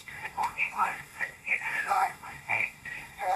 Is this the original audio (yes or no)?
no